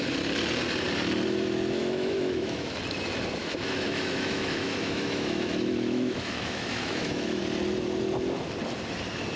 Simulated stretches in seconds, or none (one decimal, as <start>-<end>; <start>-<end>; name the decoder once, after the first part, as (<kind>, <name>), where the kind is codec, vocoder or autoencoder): 1.8-2.8 (autoencoder, DAC-VAE); 3.4-7.4